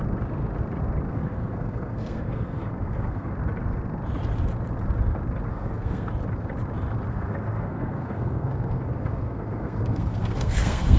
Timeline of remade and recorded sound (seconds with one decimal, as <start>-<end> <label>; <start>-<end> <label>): 0.0-1.1 recorded; 1.1-3.3 remade; 3.3-5.5 recorded; 5.5-6.1 remade; 6.1-7.1 recorded; 7.1-11.0 remade